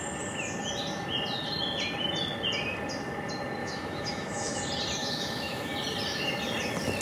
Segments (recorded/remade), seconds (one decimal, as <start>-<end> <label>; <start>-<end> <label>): 0.0-3.6 recorded; 3.6-4.6 remade; 4.6-5.0 recorded; 5.0-5.7 remade; 5.7-7.0 recorded